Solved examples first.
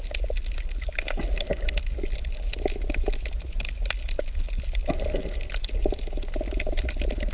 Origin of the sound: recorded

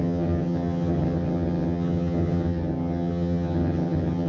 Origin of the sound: remade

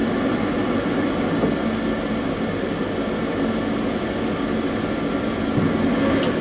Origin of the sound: recorded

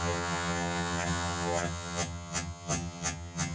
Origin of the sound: remade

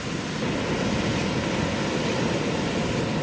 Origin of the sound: recorded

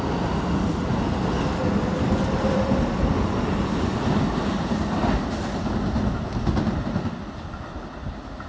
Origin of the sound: recorded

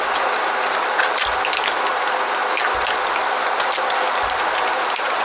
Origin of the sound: recorded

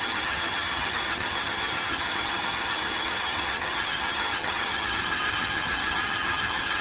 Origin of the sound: remade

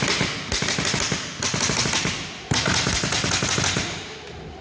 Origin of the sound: recorded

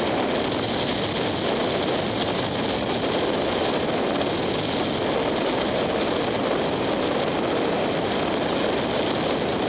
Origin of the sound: recorded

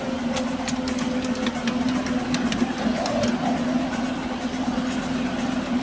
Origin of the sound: recorded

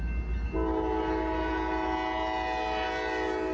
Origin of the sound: recorded